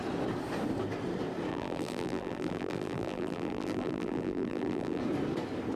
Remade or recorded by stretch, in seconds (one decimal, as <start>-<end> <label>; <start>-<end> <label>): 0.0-1.5 recorded; 1.5-5.0 remade; 5.0-5.8 recorded